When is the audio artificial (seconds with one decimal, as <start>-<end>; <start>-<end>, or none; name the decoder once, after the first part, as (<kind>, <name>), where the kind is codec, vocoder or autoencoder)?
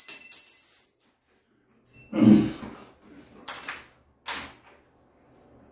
3.1-3.7 (vocoder, Vocos)